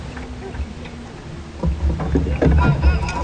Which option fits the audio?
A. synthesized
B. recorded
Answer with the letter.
B